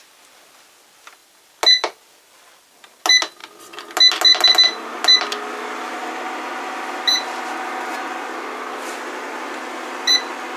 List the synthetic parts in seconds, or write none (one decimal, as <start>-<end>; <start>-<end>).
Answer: none

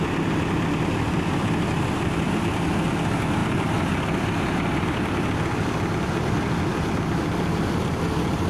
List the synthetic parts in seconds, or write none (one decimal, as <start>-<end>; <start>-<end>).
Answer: none

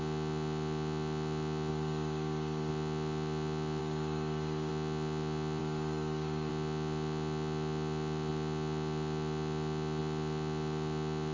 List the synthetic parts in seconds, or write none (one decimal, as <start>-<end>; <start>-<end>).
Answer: 1.7-2.7; 3.8-4.7; 5.6-6.5

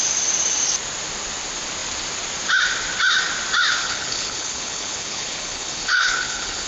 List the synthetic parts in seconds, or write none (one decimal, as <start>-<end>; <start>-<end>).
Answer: 3.8-6.7

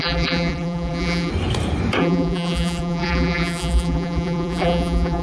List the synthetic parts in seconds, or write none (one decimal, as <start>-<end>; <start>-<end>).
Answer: 0.0-1.3; 2.0-5.2